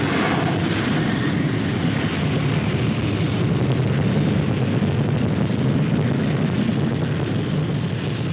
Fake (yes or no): no